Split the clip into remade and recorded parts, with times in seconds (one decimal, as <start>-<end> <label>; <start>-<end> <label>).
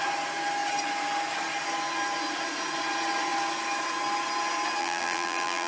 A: 0.0-4.8 recorded; 4.8-5.7 remade